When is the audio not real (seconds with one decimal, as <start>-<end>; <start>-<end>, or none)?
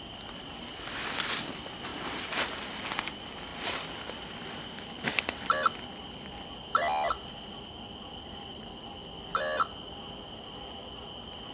none